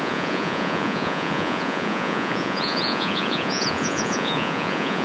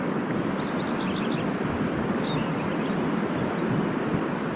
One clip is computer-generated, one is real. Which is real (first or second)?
second